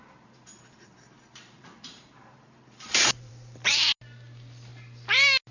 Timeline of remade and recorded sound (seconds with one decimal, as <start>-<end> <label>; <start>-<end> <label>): 0.0-3.3 remade; 3.3-5.5 recorded